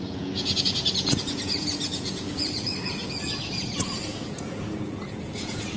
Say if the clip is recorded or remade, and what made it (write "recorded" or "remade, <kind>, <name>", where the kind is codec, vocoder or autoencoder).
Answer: remade, vocoder, Vocos